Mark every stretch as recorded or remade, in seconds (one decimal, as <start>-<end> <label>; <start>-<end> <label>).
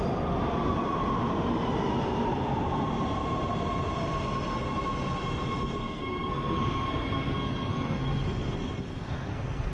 0.0-5.8 recorded; 5.8-9.7 remade